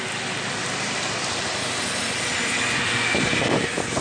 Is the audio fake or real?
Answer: fake